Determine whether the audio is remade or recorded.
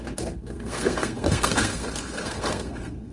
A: remade